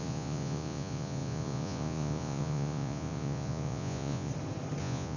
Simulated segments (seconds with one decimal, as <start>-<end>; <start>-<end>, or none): 0.0-4.3; 4.8-5.2